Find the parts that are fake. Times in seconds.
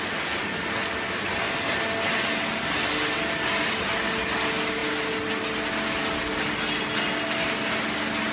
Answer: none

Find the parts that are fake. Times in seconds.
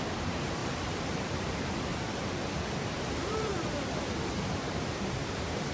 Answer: 0.0-0.6 (vocoder, BigVGAN v2); 1.2-1.9; 2.9-3.5; 4.6-5.7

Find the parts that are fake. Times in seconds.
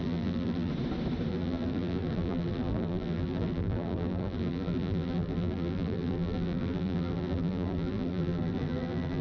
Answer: 0.0-0.7 (vocoder, BigVGAN v2); 1.3-9.2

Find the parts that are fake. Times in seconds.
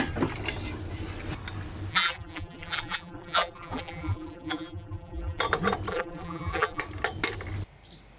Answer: 1.9-5.4 (vocoder, BigVGAN v2); 5.9-6.8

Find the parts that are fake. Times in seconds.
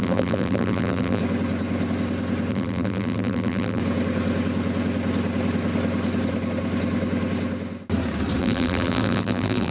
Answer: 0.0-1.2 (vocoder, BigVGAN v2); 2.5-3.8; 8.4-9.7